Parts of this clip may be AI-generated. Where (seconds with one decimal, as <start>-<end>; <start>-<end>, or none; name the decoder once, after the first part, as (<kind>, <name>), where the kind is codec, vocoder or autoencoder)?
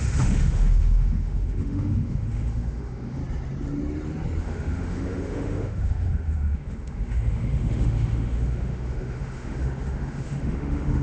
0.0-3.2 (autoencoder, DAC-VAE); 4.4-11.0